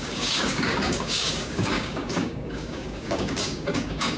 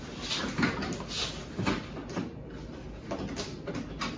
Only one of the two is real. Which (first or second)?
second